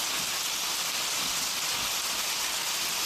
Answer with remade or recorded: recorded